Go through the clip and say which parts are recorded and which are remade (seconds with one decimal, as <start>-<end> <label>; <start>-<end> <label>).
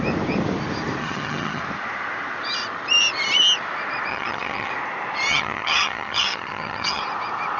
0.0-1.0 recorded; 1.0-1.6 remade; 1.6-4.1 recorded; 4.1-4.7 remade; 4.7-5.3 recorded; 5.3-7.0 remade; 7.0-7.6 recorded